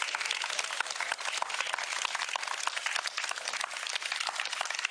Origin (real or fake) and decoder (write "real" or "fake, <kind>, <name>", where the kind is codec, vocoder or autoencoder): real